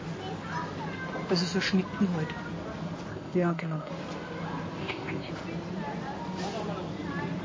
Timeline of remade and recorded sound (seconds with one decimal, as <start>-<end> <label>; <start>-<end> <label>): 0.0-3.1 recorded; 3.1-3.9 remade; 3.9-4.8 recorded; 4.8-5.3 remade; 5.3-7.4 recorded